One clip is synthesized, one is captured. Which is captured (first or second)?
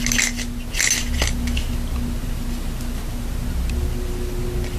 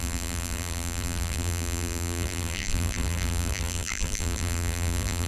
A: first